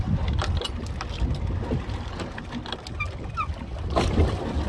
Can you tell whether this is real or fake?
real